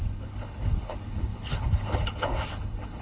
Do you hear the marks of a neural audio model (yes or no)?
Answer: yes